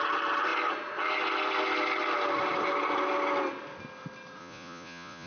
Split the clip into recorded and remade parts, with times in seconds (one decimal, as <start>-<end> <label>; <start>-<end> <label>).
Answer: 0.0-4.4 recorded; 4.4-5.3 remade